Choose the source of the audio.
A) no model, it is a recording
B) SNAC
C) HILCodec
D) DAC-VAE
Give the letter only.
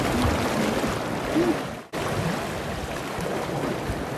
A